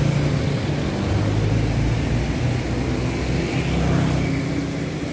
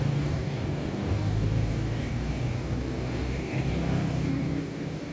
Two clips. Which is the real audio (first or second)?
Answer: first